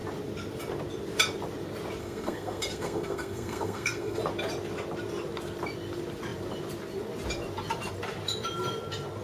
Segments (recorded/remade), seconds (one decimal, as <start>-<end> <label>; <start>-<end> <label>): 0.0-2.0 recorded; 2.0-4.2 remade; 4.2-9.2 recorded